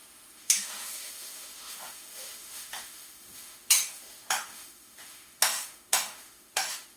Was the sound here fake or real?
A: fake